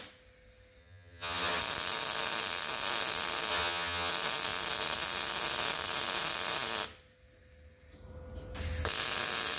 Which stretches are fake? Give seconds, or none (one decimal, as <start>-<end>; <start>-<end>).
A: 0.8-1.6; 3.5-4.1